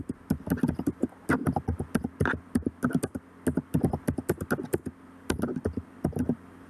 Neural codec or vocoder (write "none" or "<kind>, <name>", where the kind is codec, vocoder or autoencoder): none